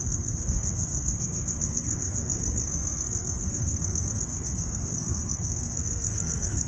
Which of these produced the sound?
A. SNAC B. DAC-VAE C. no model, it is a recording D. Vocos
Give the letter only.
A